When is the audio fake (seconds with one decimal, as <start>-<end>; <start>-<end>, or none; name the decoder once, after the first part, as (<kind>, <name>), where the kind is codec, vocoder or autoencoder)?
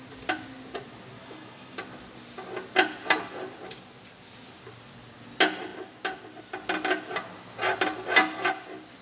1.2-1.8 (autoencoder, DAC-VAE)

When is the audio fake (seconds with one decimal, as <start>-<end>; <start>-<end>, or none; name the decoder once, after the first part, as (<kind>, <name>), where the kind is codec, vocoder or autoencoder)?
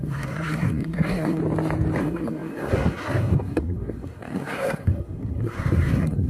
0.0-1.4 (codec, SNAC); 2.0-6.3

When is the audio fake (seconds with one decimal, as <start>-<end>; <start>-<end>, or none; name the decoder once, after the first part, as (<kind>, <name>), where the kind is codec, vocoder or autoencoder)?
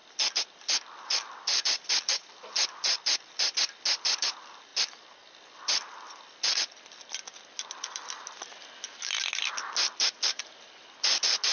none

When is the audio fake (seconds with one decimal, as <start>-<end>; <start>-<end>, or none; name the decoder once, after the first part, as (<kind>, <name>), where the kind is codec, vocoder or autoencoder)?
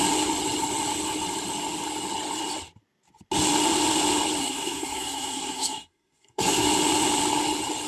4.4-6.7 (codec, SNAC)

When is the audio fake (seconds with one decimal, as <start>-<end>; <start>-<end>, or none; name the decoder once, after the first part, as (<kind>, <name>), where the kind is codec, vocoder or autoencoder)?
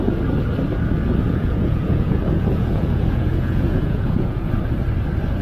1.3-4.5 (vocoder, Vocos)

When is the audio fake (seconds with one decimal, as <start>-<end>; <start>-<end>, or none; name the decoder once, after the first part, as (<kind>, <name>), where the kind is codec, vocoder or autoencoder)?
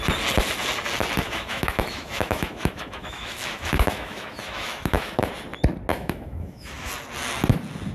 1.2-5.3 (autoencoder, DAC-VAE); 5.9-6.9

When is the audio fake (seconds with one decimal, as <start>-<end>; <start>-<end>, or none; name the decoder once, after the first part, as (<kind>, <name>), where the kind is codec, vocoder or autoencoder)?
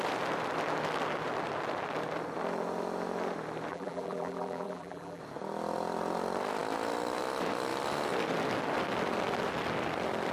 3.7-5.2 (vocoder, BigVGAN v2)